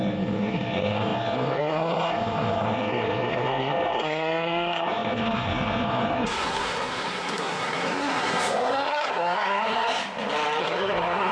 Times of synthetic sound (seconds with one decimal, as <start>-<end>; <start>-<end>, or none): 0.0-10.0; 10.6-11.3